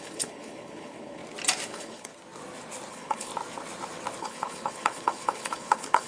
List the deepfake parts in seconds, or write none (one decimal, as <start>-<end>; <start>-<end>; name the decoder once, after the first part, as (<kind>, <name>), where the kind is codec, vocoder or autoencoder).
0.0-1.2 (codec, HILCodec); 1.7-2.1; 2.9-3.3; 4.2-6.1